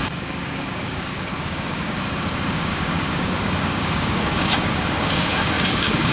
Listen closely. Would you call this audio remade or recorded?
remade